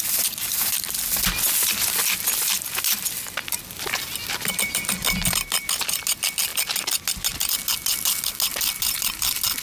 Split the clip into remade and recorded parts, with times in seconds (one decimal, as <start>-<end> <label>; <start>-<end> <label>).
0.0-9.6 recorded

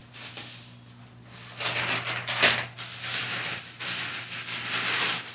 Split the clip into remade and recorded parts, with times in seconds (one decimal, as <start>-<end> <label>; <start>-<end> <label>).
0.0-5.3 recorded

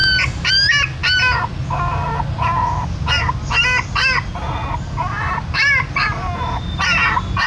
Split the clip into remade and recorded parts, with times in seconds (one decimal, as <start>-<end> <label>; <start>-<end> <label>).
0.0-7.5 recorded

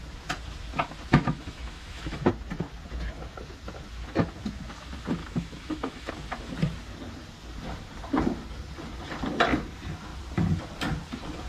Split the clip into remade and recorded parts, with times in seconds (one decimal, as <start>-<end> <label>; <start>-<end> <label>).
0.0-1.1 recorded; 1.1-2.3 remade; 2.3-5.2 recorded; 5.2-6.1 remade; 6.1-11.5 recorded

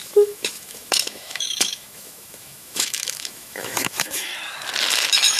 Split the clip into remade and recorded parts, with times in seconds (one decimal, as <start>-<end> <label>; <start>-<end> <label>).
0.0-4.3 remade; 4.3-4.9 recorded; 4.9-5.4 remade